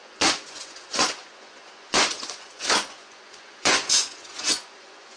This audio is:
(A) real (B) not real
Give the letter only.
B